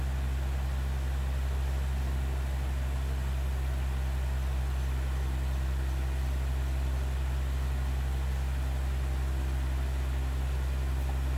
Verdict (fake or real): real